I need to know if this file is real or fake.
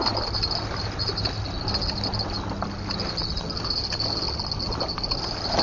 real